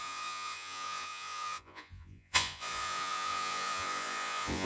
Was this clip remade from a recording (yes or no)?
yes